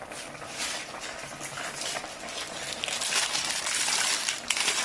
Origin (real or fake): fake